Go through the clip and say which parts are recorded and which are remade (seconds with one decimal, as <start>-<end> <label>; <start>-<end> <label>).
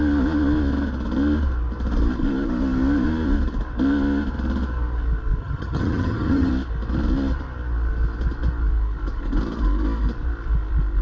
0.0-5.4 recorded; 5.4-6.5 remade; 6.5-11.0 recorded